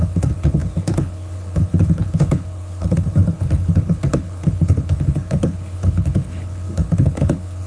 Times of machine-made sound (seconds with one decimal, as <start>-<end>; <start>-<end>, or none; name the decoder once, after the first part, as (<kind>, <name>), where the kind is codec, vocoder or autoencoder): 0.0-7.7 (codec, HILCodec)